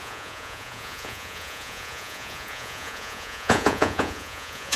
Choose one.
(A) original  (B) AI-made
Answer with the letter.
B